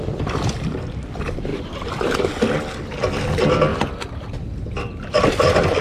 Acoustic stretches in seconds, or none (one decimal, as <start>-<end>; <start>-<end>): 0.0-1.5; 2.3-3.7; 5.3-5.8